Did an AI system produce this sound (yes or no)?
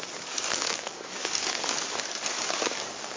yes